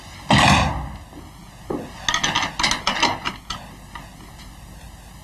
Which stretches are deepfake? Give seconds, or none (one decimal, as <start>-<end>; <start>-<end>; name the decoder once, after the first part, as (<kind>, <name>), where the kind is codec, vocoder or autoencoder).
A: none